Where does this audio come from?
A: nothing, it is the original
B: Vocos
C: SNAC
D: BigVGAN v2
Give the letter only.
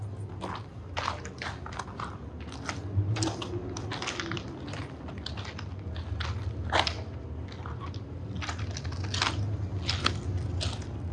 A